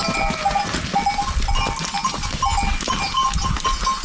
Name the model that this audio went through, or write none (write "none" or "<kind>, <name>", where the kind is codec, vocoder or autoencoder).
none